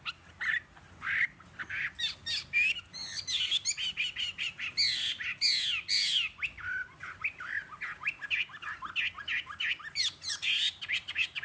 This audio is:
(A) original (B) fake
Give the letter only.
A